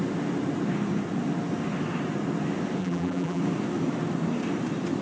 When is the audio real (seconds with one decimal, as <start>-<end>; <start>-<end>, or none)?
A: 0.0-2.8; 3.4-5.0